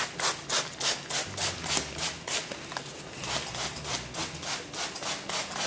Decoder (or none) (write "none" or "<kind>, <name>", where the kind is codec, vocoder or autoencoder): none